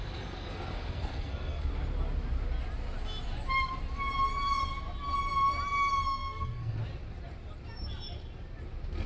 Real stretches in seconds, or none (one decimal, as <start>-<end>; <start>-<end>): 1.7-6.0; 6.8-9.1